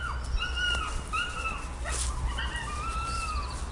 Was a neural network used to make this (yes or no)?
no